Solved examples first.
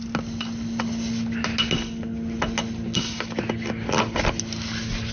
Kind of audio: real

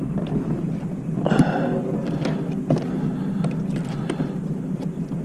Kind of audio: real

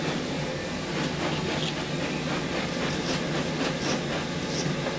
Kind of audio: real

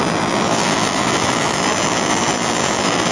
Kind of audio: fake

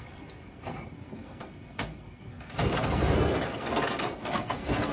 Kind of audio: fake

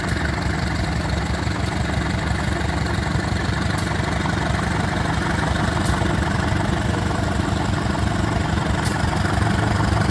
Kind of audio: real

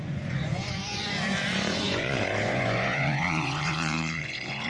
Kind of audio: fake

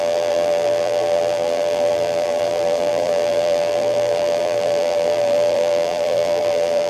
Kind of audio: fake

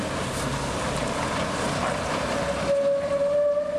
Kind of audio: real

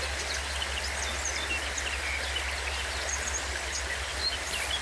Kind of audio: real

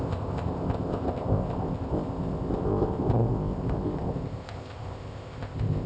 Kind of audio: fake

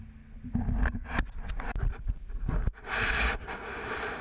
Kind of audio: real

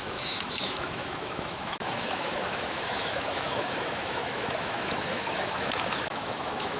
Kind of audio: fake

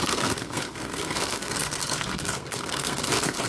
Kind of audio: fake